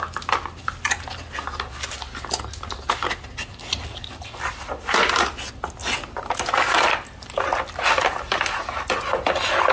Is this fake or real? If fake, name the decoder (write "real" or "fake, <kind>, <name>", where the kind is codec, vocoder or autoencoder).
real